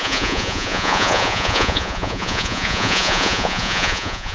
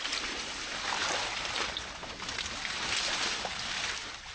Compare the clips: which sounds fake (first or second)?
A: first